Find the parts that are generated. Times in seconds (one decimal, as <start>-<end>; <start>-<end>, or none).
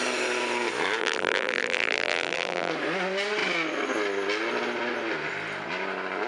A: 1.0-2.7